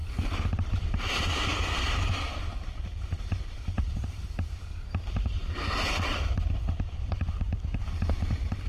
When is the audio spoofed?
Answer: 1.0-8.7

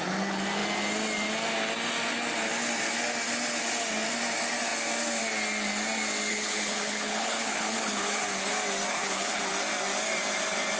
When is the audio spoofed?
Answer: 6.3-8.5; 8.9-9.4

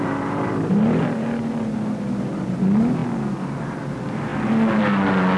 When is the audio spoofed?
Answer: none

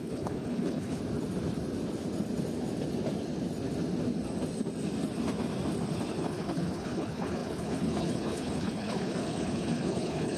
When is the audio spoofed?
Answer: 0.0-1.0; 6.1-10.4